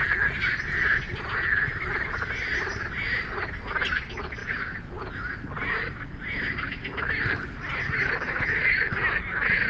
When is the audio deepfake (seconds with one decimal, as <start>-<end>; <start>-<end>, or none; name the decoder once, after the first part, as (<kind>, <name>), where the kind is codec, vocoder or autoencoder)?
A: none